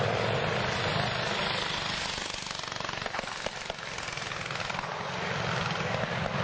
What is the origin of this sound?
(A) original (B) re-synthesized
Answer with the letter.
A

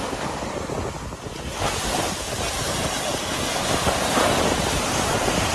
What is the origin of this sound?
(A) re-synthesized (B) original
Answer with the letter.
B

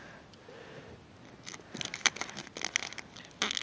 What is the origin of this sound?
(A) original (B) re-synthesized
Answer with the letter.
A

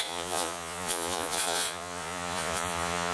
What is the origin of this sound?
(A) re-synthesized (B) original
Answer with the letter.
A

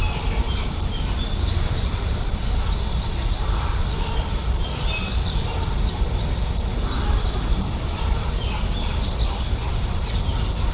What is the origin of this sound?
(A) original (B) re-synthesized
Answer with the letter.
A